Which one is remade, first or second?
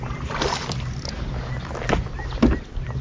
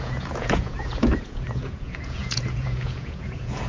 second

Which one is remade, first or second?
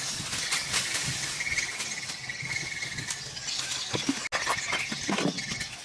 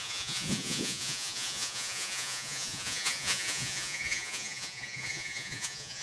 second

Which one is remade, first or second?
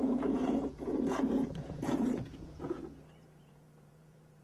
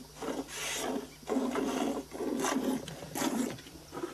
first